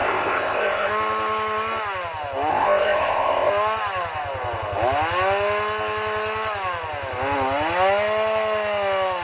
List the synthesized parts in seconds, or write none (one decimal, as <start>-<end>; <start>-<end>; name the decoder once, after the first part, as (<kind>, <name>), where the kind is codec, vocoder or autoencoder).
0.0-0.9 (codec, ZipCodec); 2.5-3.5